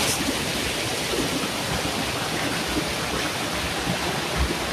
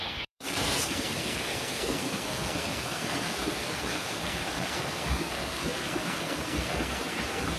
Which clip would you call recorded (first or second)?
first